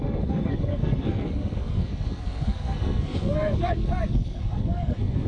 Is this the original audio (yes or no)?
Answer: no